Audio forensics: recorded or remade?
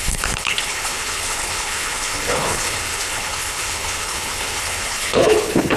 remade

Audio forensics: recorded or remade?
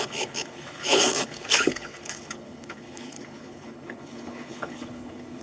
remade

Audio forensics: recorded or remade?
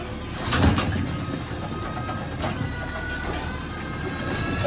recorded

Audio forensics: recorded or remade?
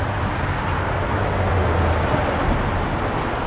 recorded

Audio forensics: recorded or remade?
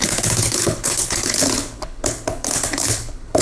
remade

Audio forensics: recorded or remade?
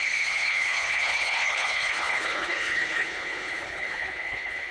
remade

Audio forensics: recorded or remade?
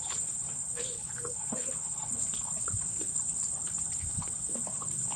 remade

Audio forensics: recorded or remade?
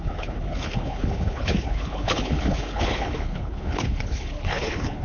remade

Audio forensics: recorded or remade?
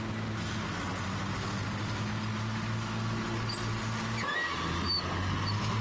recorded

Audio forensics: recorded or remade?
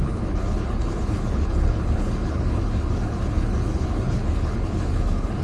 remade